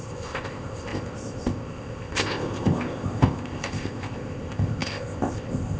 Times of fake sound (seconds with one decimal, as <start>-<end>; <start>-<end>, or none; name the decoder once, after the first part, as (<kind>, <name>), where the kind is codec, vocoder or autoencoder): 0.0-5.8 (codec, ZipCodec)